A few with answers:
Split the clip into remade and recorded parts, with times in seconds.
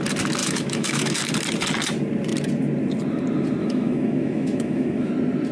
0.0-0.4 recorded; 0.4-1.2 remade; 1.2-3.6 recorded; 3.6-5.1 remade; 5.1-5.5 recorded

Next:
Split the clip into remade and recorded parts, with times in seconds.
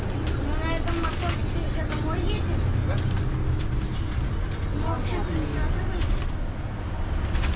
0.0-7.6 recorded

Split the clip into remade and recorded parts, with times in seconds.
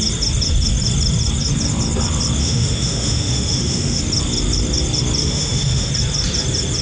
0.0-2.4 recorded; 2.4-4.0 remade; 4.0-5.2 recorded; 5.2-5.9 remade; 5.9-6.8 recorded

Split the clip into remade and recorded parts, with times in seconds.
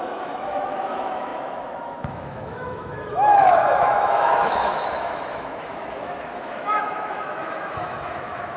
0.0-8.6 remade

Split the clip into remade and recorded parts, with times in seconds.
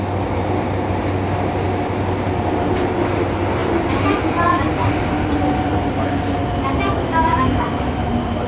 0.0-7.0 recorded; 7.0-8.1 remade; 8.1-8.5 recorded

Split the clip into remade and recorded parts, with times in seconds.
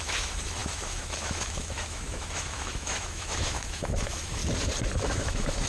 0.0-4.4 remade; 4.4-5.0 recorded; 5.0-5.7 remade